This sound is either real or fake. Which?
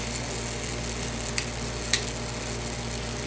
real